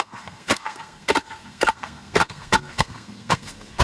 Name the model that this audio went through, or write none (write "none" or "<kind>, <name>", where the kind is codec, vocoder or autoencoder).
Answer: codec, SNAC